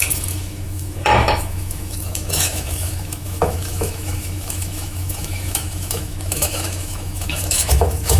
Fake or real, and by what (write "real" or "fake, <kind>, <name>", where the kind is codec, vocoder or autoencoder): fake, autoencoder, DAC-VAE